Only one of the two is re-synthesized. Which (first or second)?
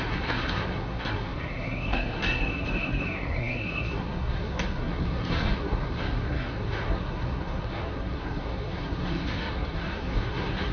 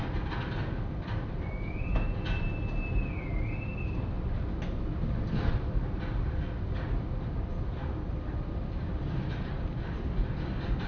first